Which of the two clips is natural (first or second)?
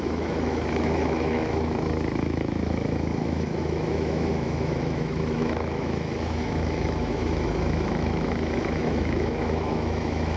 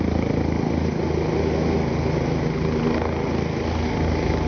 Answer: second